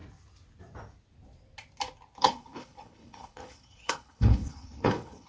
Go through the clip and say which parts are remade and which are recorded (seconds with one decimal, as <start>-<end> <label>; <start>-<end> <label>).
0.0-2.2 recorded; 2.2-5.3 remade